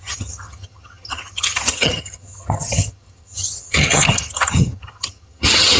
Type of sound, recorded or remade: remade